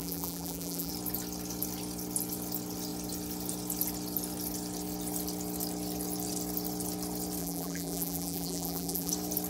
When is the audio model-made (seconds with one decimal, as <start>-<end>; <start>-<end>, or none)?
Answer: 0.0-0.9; 7.4-9.1